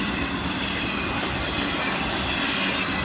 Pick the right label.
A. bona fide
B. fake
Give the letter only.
A